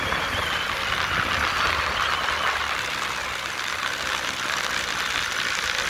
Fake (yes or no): no